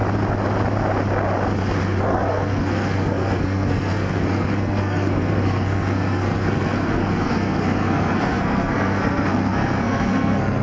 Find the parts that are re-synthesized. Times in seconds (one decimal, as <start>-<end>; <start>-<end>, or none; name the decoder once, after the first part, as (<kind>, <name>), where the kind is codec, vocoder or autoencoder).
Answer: 2.0-10.6 (codec, SNAC)